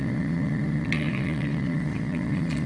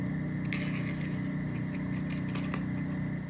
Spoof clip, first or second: first